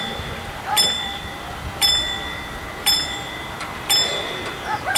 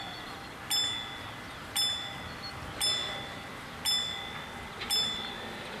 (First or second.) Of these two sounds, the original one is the second